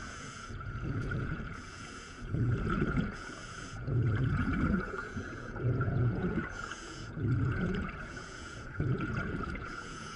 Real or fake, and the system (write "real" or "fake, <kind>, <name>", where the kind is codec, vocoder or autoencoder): fake, vocoder, Vocos